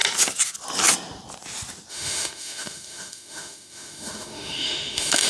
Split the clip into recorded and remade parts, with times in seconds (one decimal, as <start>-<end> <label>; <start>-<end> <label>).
0.0-1.9 recorded; 1.9-5.3 remade